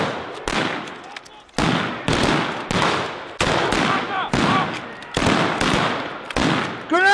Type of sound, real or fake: real